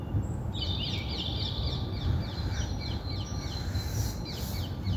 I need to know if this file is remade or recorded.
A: recorded